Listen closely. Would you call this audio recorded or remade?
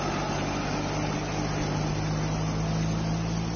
recorded